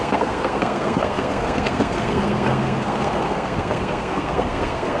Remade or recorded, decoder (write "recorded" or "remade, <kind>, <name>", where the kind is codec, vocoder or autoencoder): remade, codec, SNAC